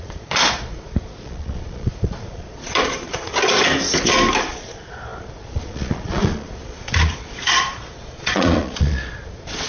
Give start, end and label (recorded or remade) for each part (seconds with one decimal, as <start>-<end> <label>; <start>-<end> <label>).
0.0-3.3 remade; 3.3-4.5 recorded; 4.5-9.7 remade